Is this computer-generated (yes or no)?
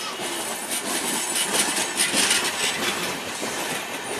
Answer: no